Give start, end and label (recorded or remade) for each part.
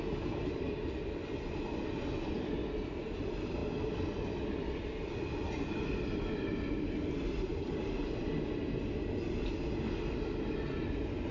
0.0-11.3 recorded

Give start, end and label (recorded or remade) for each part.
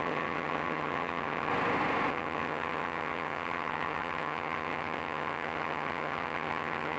0.0-1.5 remade; 1.5-2.1 recorded; 2.1-7.0 remade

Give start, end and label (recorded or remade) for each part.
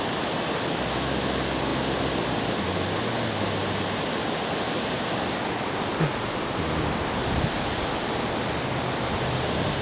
0.0-9.8 recorded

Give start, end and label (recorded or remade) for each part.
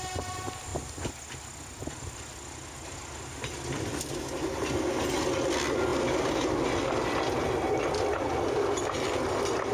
0.0-9.7 recorded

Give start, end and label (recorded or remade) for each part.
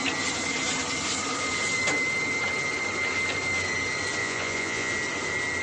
0.0-4.2 recorded; 4.2-4.9 remade; 4.9-5.6 recorded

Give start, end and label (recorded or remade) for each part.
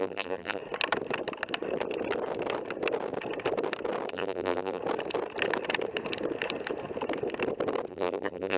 0.0-0.6 remade; 0.6-4.1 recorded; 4.1-4.8 remade; 4.8-7.9 recorded; 7.9-8.6 remade